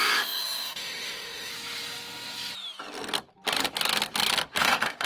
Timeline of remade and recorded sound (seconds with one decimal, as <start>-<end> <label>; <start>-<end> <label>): 0.0-1.5 remade; 1.5-4.6 recorded; 4.6-5.1 remade